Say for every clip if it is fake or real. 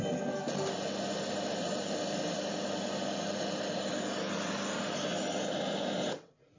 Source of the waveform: real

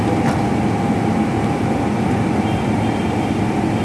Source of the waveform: real